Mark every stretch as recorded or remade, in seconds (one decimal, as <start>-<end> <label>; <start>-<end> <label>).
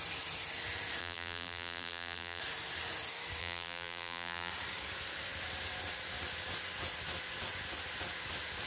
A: 0.0-1.0 recorded; 1.0-2.4 remade; 2.4-3.4 recorded; 3.4-4.5 remade; 4.5-8.7 recorded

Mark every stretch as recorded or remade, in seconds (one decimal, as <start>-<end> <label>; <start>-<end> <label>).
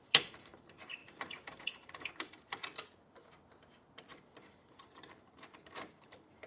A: 0.0-2.7 remade; 2.7-4.4 recorded; 4.4-6.5 remade